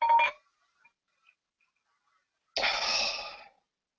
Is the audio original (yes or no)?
yes